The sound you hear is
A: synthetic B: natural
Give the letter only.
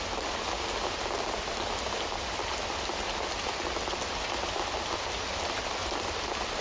B